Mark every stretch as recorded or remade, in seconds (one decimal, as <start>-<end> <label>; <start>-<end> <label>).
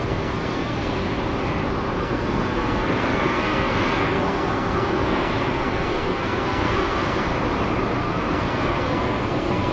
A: 0.0-1.0 remade; 1.0-2.0 recorded; 2.0-7.3 remade; 7.3-8.0 recorded; 8.0-9.7 remade